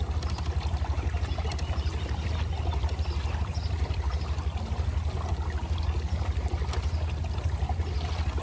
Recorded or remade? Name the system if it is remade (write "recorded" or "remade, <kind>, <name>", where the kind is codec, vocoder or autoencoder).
recorded